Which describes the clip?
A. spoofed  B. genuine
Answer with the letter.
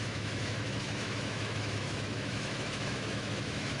A